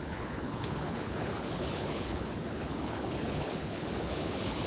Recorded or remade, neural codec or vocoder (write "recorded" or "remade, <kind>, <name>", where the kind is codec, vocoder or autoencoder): remade, codec, HILCodec